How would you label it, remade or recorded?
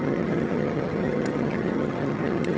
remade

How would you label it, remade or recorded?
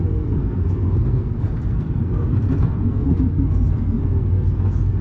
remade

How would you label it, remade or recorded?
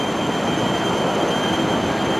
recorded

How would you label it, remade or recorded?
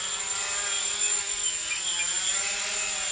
recorded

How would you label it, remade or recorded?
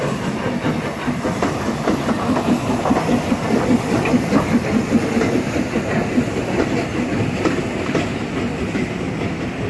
recorded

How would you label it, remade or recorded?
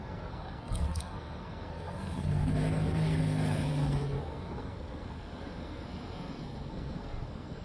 remade